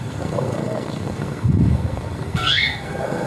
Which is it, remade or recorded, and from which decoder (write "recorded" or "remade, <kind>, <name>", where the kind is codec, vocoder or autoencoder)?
remade, codec, SNAC